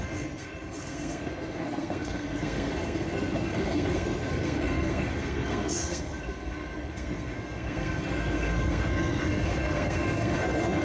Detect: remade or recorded remade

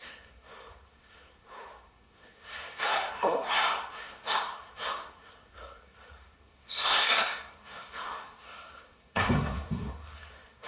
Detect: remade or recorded remade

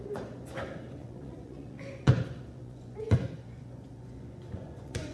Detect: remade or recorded remade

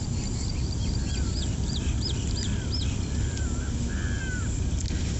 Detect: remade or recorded recorded